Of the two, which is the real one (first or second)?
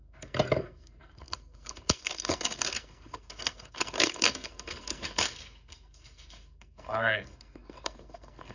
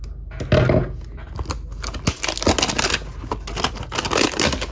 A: second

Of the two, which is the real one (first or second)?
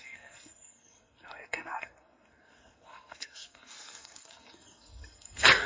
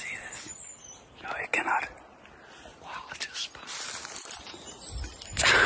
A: second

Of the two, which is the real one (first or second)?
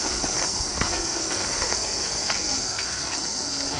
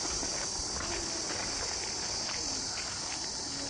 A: second